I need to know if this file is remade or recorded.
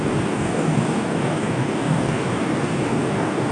remade